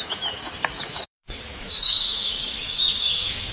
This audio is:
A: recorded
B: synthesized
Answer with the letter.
B